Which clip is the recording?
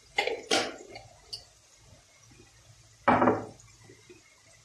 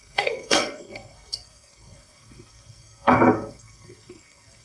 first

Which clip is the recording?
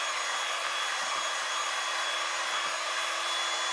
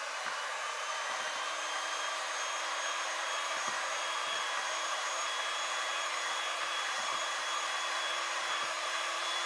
first